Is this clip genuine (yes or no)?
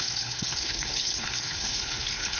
no